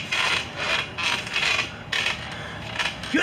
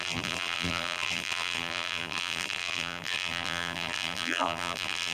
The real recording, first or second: first